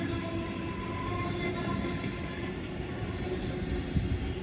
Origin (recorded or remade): recorded